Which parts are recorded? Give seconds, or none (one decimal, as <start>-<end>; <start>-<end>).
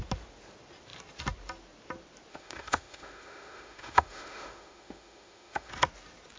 0.0-2.3; 5.7-6.4